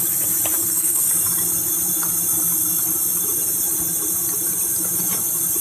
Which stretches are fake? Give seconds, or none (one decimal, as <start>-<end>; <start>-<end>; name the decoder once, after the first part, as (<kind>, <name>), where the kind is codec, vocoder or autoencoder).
0.6-1.1 (codec, SNAC)